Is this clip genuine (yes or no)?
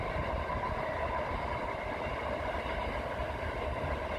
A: yes